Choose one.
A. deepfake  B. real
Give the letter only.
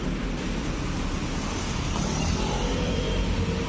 B